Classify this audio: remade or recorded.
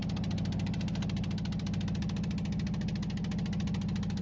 recorded